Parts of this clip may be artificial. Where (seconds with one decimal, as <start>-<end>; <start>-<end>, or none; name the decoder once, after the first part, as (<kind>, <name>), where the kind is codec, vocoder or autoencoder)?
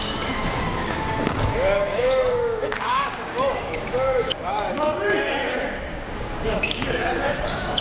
0.0-7.8 (codec, DAC)